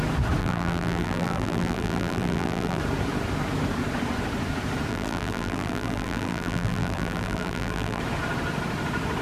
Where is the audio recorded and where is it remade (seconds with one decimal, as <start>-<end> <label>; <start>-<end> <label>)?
0.0-0.4 recorded; 0.4-2.8 remade; 2.8-4.9 recorded; 4.9-8.0 remade; 8.0-9.2 recorded